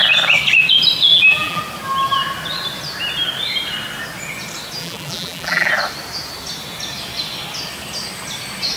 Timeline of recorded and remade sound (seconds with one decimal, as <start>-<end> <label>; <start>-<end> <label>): 0.0-1.1 recorded; 1.1-1.6 remade; 1.6-4.8 recorded; 4.8-5.7 remade; 5.7-8.8 recorded